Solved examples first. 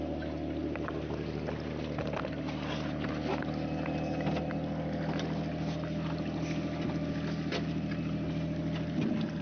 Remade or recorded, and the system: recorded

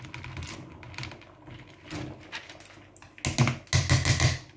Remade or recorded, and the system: recorded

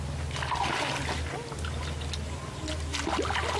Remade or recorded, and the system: recorded